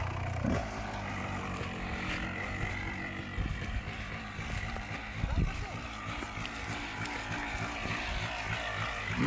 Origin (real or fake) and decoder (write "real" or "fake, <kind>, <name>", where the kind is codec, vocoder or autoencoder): real